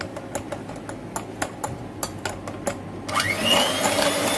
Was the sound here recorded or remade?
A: recorded